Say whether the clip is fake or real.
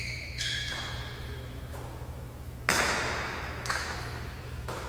fake